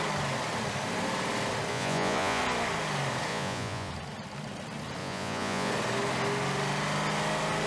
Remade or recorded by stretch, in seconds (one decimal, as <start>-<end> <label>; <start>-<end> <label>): 0.0-1.7 recorded; 1.7-2.4 remade; 2.4-3.3 recorded; 3.3-3.9 remade; 3.9-5.0 recorded; 5.0-5.7 remade; 5.7-7.7 recorded